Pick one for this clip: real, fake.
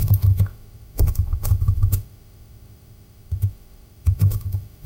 fake